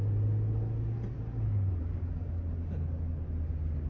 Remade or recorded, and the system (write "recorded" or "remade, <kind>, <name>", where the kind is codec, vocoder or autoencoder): recorded